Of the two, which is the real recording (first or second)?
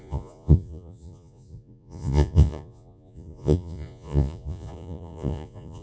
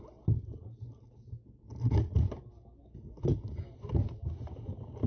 second